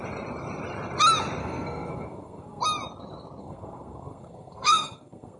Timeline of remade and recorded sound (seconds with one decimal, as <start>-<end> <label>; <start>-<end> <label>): 0.0-1.4 recorded; 1.4-2.6 remade; 2.6-3.4 recorded; 3.4-5.4 remade